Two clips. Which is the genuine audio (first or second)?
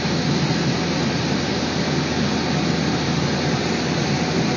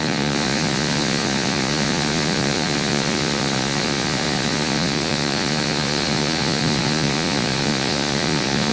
first